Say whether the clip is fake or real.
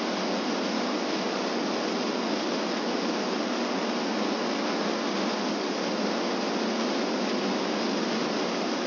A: real